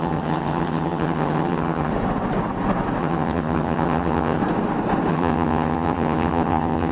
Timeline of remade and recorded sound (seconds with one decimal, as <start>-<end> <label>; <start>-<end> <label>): 0.0-1.9 remade; 1.9-3.0 recorded; 3.0-4.4 remade; 4.4-5.1 recorded; 5.1-6.9 remade